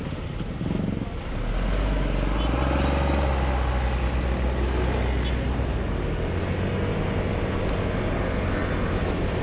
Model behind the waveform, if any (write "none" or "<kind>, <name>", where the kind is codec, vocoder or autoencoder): none